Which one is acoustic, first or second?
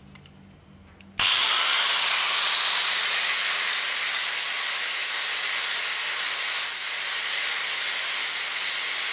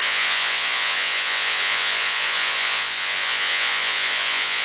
first